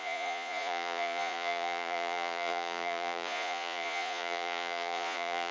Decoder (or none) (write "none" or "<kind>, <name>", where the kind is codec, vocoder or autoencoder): vocoder, Vocos